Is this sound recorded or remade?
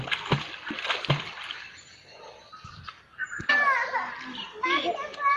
recorded